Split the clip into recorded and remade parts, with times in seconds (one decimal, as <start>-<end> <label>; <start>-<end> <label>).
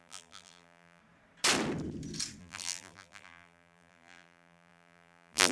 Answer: 0.0-1.0 remade; 1.0-2.4 recorded; 2.4-5.5 remade